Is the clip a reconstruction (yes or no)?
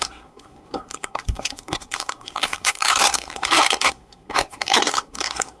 yes